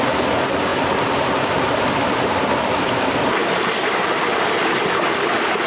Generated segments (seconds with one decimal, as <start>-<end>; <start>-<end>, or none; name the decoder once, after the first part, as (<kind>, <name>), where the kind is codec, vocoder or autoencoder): none